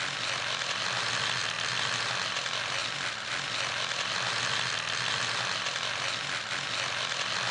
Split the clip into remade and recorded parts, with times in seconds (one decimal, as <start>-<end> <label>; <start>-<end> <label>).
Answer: 0.0-7.5 recorded